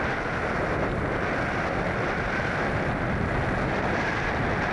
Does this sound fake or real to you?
real